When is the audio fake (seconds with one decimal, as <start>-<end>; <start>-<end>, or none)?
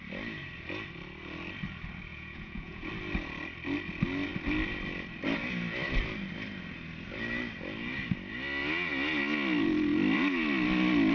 2.1-2.9